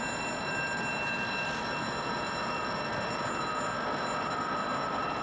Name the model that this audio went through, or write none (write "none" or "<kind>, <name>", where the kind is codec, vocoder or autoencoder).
none